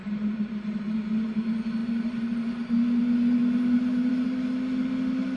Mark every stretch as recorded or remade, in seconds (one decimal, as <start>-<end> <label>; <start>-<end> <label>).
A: 0.0-0.8 remade; 0.8-1.8 recorded; 1.8-2.5 remade; 2.5-5.4 recorded

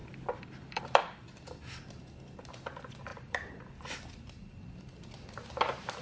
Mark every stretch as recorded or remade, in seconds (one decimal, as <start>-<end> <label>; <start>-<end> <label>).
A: 0.0-2.0 remade; 2.0-3.1 recorded; 3.1-3.7 remade; 3.7-4.4 recorded; 4.4-5.0 remade; 5.0-6.0 recorded

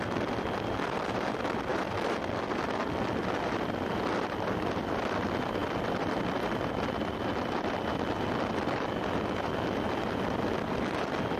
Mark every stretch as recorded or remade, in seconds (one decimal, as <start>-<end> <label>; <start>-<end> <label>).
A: 0.0-11.4 recorded